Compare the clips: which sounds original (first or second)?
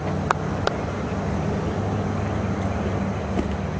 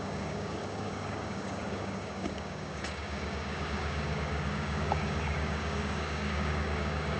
first